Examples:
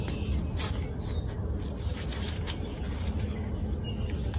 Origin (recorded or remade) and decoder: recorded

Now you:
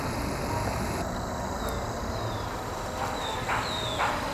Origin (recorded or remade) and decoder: recorded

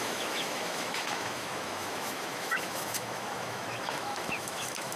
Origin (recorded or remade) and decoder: remade, autoencoder, DAC-VAE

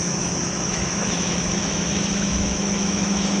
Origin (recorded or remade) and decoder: remade, autoencoder, DAC-VAE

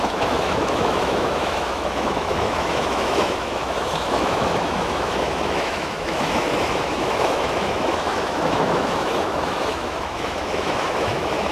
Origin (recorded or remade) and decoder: remade, autoencoder, DAC-VAE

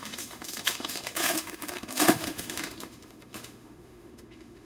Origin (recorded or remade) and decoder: remade, autoencoder, DAC-VAE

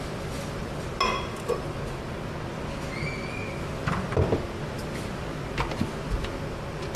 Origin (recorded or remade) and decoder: recorded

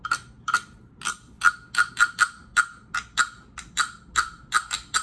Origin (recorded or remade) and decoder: recorded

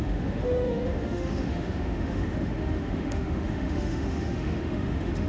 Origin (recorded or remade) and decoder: remade, autoencoder, DAC-VAE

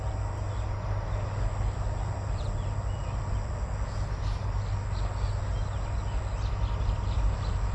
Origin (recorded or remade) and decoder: recorded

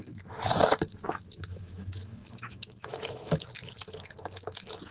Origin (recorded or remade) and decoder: remade, autoencoder, DAC-VAE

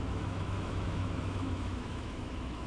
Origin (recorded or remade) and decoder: remade, autoencoder, DAC-VAE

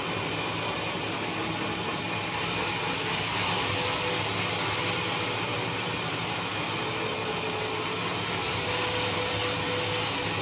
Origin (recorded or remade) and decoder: recorded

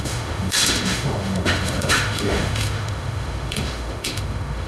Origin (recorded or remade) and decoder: remade, autoencoder, DAC-VAE